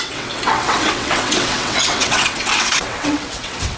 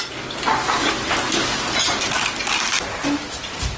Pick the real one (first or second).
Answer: second